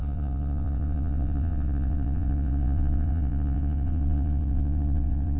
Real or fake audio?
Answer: fake